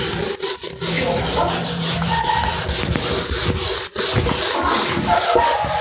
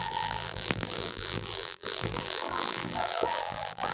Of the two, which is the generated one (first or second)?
second